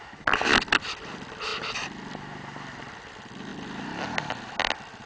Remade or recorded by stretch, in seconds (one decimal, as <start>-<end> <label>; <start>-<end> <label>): 0.0-5.1 recorded

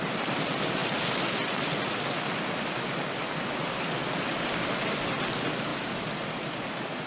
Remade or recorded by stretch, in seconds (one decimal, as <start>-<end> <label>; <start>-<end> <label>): 0.0-7.1 recorded

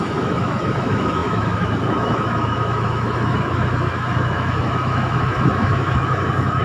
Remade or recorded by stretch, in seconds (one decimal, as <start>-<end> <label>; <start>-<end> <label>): 0.0-6.6 remade

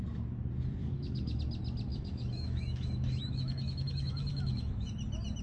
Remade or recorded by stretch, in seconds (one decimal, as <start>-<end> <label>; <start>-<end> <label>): 0.0-0.8 recorded; 0.8-1.4 remade; 1.4-1.9 recorded; 1.9-4.9 remade; 4.9-5.4 recorded